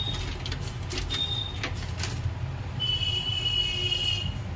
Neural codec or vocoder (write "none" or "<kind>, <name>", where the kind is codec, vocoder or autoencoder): none